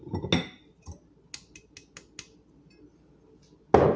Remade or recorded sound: recorded